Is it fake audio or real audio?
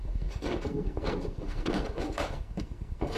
fake